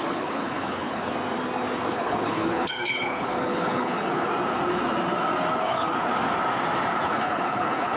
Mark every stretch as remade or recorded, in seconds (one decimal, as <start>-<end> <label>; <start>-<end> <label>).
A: 0.0-1.1 remade; 1.1-1.9 recorded; 1.9-4.3 remade; 4.3-5.6 recorded; 5.6-6.1 remade; 6.1-7.0 recorded; 7.0-8.0 remade